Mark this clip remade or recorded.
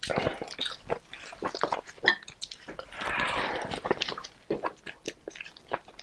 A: recorded